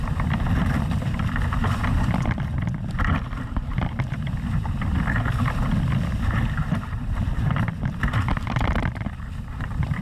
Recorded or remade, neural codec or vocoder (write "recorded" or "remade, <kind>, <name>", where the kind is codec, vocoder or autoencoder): remade, vocoder, BigVGAN v2